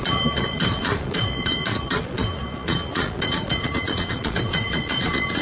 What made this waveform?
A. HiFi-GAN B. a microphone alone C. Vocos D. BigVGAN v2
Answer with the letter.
C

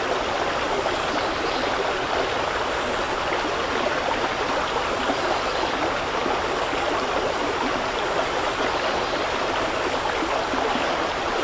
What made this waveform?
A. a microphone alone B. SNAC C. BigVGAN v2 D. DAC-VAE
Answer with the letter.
A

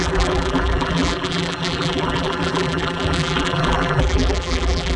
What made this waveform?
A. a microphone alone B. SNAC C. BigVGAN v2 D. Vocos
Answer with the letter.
C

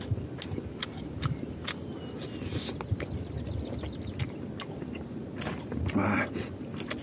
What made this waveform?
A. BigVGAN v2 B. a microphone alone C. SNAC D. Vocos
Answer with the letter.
B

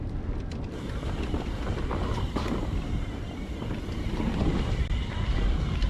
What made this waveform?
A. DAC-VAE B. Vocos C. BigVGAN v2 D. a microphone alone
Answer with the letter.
D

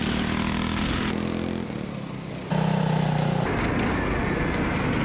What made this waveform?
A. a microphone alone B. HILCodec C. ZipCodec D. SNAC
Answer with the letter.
A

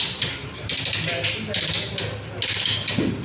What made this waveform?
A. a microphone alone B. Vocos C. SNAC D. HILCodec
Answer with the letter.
A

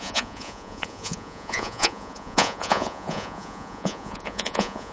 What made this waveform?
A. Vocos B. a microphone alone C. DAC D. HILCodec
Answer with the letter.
A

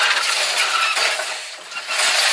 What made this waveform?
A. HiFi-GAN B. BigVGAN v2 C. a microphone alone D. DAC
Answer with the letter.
C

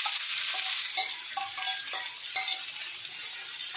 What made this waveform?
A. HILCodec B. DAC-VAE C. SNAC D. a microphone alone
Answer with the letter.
D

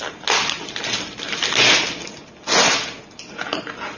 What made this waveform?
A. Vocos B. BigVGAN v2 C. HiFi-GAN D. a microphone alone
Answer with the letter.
D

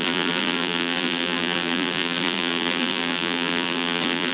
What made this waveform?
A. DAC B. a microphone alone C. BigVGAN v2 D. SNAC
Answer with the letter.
C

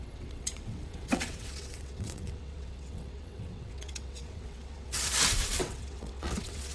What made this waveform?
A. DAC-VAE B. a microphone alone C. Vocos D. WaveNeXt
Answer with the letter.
D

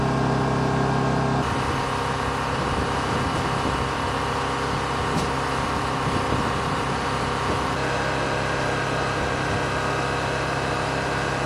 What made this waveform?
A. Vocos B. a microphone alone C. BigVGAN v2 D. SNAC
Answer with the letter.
B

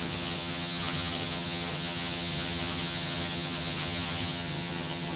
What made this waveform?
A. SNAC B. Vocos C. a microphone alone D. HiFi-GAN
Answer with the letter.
D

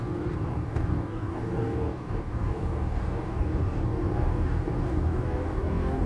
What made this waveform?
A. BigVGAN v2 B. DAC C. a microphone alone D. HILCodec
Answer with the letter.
B